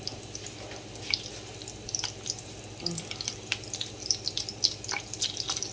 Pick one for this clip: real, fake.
real